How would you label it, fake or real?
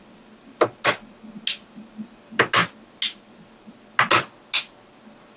real